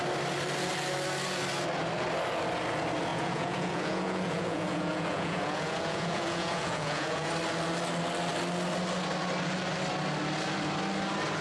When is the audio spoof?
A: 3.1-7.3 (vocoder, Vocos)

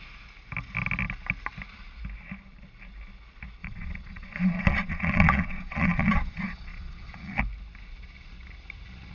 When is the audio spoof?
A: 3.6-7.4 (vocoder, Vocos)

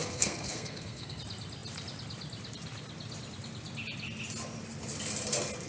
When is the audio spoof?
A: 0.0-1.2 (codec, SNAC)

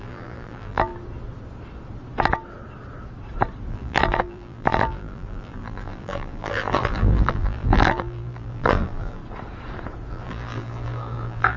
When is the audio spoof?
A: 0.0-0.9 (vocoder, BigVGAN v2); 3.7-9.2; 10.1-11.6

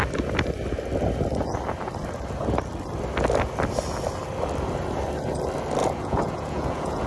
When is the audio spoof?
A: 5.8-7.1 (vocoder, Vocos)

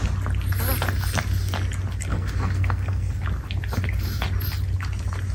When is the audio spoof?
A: 2.1-3.2 (codec, SNAC)

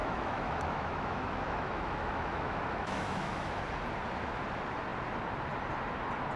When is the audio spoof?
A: 0.0-3.6 (autoencoder, DAC-VAE)